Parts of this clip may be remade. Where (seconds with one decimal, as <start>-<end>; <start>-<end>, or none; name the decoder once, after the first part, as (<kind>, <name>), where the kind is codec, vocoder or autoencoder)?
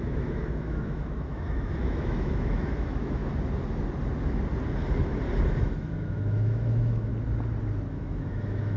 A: 0.0-3.2 (autoencoder, DAC-VAE); 5.6-7.1; 7.9-8.8